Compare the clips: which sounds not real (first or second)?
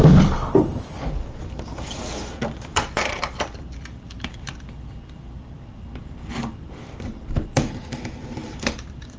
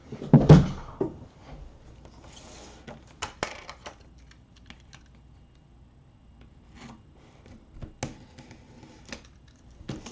first